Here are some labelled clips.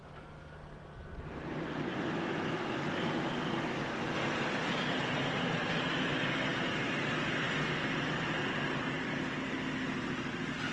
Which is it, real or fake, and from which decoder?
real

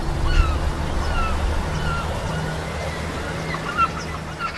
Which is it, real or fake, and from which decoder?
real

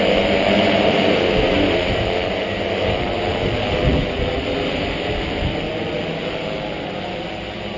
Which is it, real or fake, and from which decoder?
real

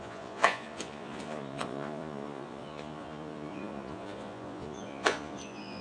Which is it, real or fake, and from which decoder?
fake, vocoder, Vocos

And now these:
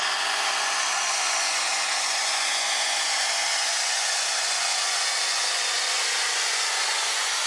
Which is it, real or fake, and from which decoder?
fake, vocoder, Vocos